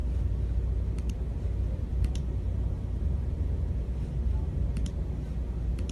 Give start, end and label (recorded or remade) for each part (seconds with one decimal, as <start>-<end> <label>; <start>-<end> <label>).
0.0-1.9 recorded; 1.9-4.7 remade; 4.7-5.9 recorded